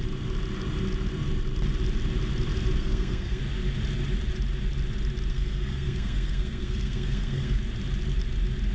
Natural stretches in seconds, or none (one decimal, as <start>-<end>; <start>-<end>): 0.0-2.8; 3.4-5.3; 7.6-8.7

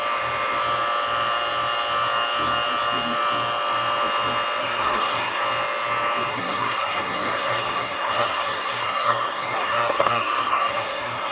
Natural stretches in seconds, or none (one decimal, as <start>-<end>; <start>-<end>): 0.0-4.6; 5.4-6.3

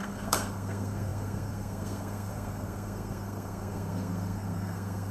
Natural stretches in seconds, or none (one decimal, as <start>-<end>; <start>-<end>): none

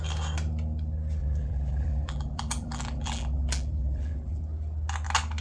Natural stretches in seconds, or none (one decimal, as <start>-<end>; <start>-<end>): 0.0-1.2; 4.4-5.4

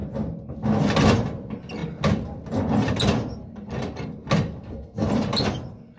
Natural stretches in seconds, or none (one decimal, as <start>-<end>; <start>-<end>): 0.0-4.6; 5.1-6.0

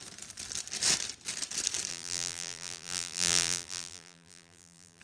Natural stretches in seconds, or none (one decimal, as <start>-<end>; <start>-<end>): 0.0-1.9

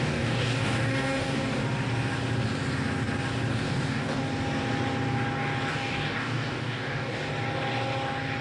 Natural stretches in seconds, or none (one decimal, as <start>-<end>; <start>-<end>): 1.6-3.5; 4.2-5.7; 7.3-8.4